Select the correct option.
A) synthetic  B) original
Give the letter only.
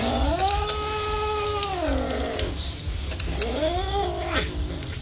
B